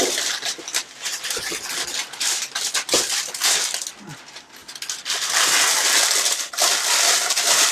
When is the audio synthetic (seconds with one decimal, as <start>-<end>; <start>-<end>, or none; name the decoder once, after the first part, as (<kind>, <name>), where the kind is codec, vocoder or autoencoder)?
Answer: none